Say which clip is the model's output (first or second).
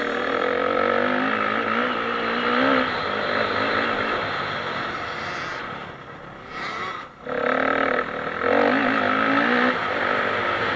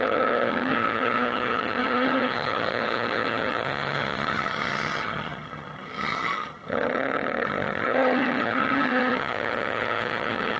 second